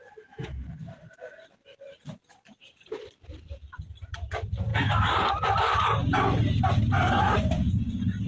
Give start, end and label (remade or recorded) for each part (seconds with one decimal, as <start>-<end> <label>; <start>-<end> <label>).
0.0-4.7 recorded; 4.7-5.3 remade; 5.3-6.4 recorded; 6.4-8.3 remade